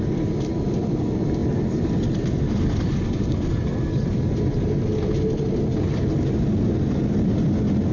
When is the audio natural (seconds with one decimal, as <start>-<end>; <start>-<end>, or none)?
0.0-7.9